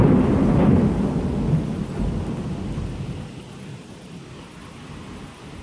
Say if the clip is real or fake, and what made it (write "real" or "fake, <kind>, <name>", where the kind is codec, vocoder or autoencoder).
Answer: real